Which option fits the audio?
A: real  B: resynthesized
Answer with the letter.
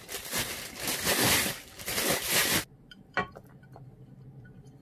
B